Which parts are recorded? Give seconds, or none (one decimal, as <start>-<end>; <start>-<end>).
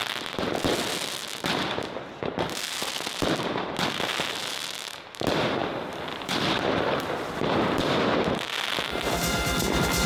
0.0-5.6; 8.4-10.1